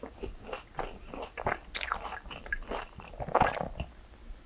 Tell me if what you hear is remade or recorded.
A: recorded